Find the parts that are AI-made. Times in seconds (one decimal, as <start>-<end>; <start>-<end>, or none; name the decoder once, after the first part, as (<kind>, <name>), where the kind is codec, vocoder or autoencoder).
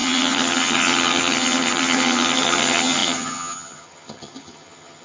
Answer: 0.0-5.0 (vocoder, HiFi-GAN)